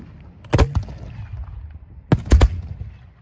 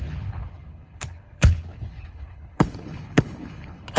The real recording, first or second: first